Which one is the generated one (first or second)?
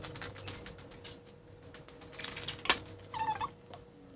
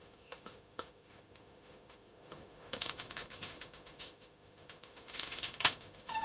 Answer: second